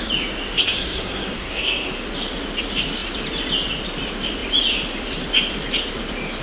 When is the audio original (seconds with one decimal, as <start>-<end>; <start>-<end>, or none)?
0.0-0.6; 1.9-6.4